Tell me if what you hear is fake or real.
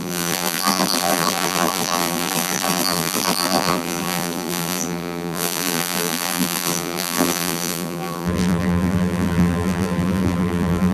fake